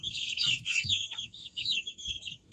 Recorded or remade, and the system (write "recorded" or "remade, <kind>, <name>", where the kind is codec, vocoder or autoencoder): remade, codec, SNAC